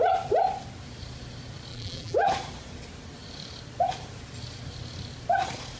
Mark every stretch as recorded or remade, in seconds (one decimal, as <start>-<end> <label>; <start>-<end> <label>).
0.0-1.7 recorded; 1.7-2.3 remade; 2.3-5.8 recorded